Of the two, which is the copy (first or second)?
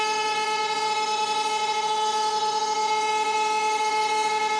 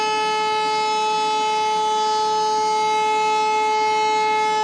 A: first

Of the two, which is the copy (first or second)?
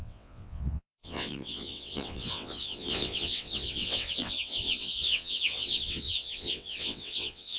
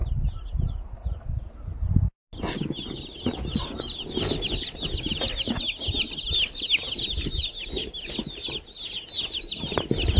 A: first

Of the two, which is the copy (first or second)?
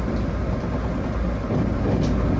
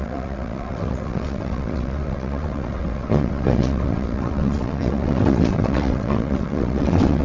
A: second